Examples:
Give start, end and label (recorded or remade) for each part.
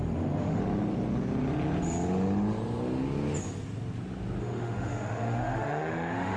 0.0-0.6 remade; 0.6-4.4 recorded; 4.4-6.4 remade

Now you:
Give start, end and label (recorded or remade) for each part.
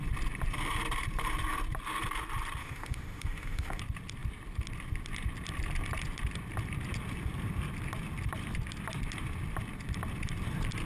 0.0-2.6 recorded; 2.6-3.8 remade; 3.8-10.9 recorded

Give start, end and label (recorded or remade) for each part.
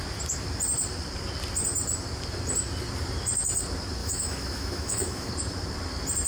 0.0-4.0 recorded; 4.0-5.3 remade; 5.3-6.3 recorded